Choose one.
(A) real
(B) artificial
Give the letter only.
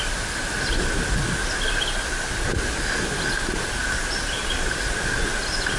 A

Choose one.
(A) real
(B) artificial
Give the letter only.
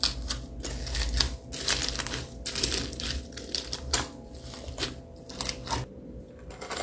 A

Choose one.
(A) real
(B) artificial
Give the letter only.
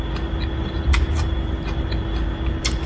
A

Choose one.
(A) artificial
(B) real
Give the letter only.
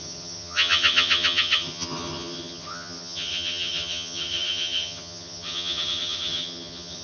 A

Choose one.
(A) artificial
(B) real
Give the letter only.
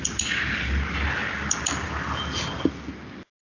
B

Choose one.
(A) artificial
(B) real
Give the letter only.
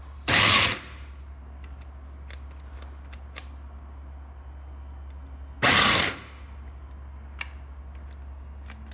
B